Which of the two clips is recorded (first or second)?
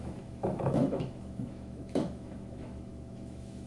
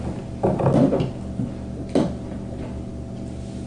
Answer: second